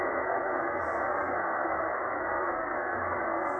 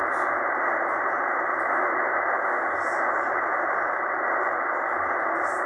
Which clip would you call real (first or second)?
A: second